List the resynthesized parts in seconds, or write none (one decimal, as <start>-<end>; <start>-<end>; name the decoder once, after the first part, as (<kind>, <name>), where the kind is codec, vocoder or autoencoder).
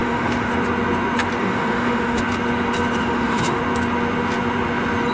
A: 0.0-0.5 (autoencoder, DAC-VAE); 1.4-2.2; 3.0-3.6